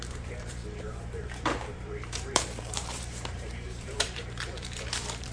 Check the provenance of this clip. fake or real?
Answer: fake